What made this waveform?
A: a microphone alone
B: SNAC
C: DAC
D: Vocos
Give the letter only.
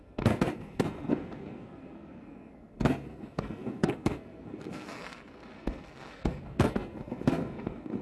B